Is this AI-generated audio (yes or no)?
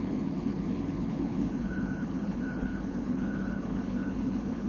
yes